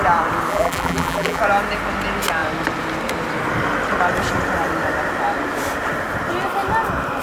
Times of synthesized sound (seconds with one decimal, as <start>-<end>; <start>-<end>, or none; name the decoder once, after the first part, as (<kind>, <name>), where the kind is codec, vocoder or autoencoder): 0.5-1.4 (vocoder, BigVGAN v2)